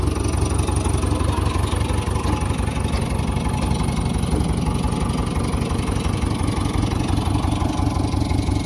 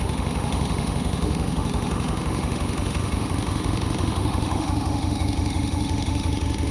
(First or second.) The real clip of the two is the first